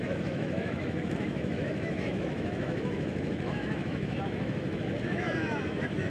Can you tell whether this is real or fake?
fake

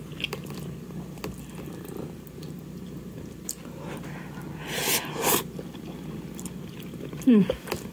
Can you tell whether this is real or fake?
real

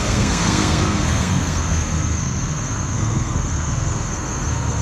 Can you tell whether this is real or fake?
fake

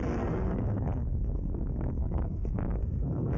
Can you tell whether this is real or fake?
fake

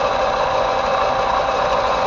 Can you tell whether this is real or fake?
fake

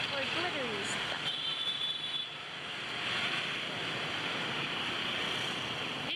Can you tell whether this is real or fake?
real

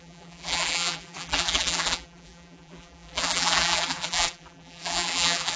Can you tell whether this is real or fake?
fake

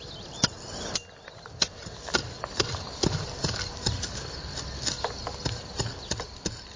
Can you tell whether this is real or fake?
real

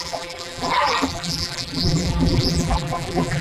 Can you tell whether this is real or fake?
fake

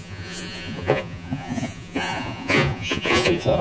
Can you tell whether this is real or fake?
fake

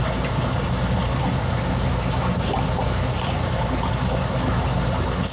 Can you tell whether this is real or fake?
real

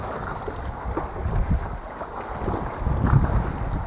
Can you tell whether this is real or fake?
real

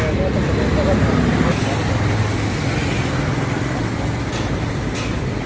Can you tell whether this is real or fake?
real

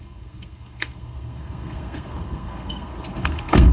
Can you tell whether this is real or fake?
fake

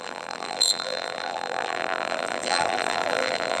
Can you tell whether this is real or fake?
fake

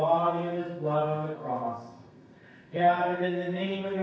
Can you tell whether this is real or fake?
fake